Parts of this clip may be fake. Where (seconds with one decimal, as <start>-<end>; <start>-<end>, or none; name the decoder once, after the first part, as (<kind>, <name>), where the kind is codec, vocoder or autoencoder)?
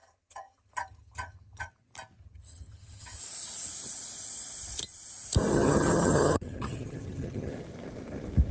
0.0-1.7 (vocoder, HiFi-GAN); 2.2-3.2; 5.5-7.5